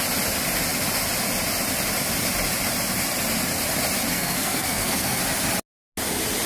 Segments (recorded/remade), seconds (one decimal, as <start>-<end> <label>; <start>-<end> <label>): 0.0-4.1 recorded; 4.1-5.2 remade; 5.2-6.5 recorded